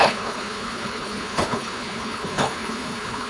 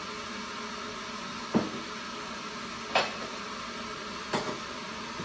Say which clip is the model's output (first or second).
first